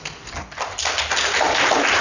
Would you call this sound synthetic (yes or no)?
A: no